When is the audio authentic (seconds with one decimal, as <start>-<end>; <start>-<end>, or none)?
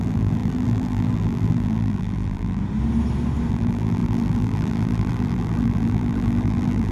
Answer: 2.6-3.5